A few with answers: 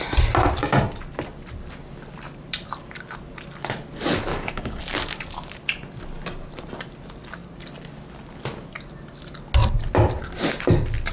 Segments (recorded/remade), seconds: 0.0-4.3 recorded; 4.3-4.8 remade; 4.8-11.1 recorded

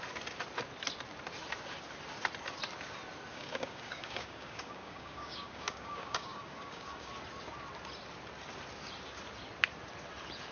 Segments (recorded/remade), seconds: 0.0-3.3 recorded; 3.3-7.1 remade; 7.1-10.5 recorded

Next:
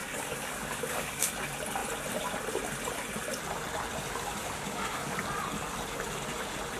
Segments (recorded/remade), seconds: 0.0-1.3 remade; 1.3-4.4 recorded; 4.4-5.3 remade; 5.3-6.8 recorded